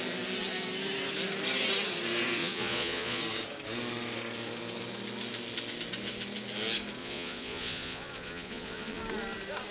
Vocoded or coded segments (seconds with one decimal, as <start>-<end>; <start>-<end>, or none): 2.4-3.2; 7.0-9.0